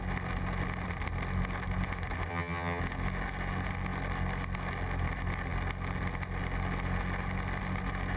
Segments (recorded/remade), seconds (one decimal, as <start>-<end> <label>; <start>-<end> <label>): 0.0-2.3 recorded; 2.3-2.8 remade; 2.8-8.2 recorded